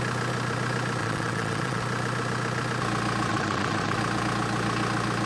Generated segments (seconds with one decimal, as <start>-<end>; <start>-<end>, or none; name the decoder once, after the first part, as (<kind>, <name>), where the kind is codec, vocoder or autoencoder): 1.0-1.8 (vocoder, Vocos); 3.3-4.0

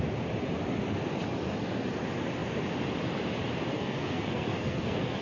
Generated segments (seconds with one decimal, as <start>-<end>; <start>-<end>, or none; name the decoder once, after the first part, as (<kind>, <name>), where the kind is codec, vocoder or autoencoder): 3.7-5.2 (codec, SNAC)

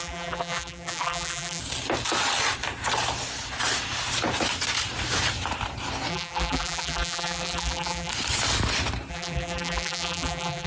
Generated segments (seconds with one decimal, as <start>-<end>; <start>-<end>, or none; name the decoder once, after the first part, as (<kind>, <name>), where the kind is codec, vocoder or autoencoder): 0.0-1.6 (vocoder, BigVGAN v2); 6.1-8.1; 9.1-10.7